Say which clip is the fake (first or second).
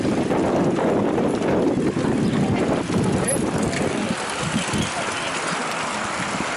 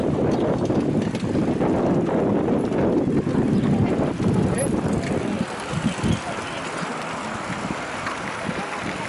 first